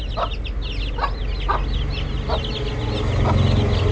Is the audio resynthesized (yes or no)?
no